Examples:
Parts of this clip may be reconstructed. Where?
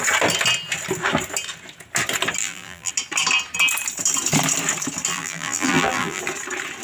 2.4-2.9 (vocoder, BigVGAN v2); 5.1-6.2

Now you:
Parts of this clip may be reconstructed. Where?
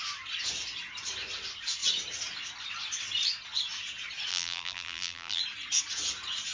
4.3-5.4 (vocoder, BigVGAN v2)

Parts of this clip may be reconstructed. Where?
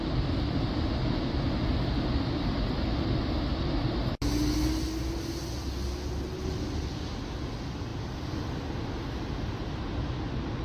none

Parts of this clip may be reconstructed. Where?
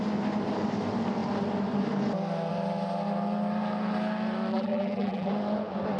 4.5-5.3 (vocoder, BigVGAN v2)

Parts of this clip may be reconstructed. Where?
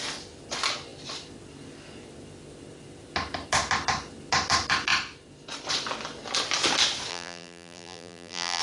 7.1-8.6 (vocoder, BigVGAN v2)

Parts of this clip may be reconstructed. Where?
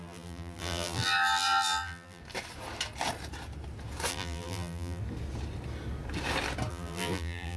0.0-2.2 (vocoder, BigVGAN v2); 4.1-5.0; 6.7-7.6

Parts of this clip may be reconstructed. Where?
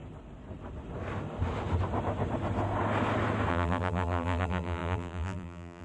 3.5-5.8 (vocoder, BigVGAN v2)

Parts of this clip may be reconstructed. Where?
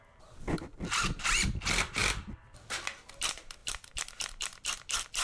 0.0-2.0 (vocoder, BigVGAN v2); 3.1-5.2